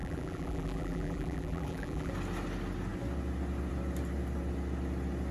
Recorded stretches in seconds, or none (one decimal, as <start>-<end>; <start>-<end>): 2.1-5.3